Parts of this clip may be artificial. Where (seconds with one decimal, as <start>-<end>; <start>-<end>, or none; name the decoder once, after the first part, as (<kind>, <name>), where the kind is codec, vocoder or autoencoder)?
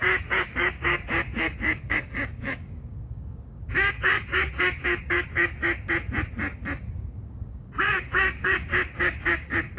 0.0-5.6 (codec, DAC); 6.9-9.8